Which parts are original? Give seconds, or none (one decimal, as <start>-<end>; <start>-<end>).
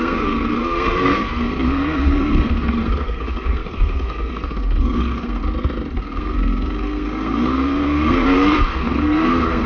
5.4-6.0